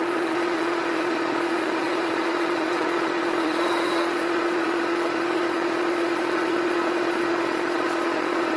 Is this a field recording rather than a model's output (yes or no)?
no